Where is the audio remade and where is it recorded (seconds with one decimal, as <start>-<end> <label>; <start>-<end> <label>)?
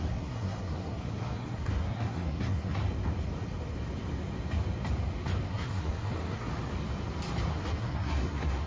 0.0-2.8 remade; 2.8-5.5 recorded; 5.5-6.5 remade; 6.5-7.5 recorded; 7.5-8.7 remade